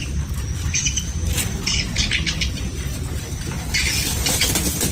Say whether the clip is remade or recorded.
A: recorded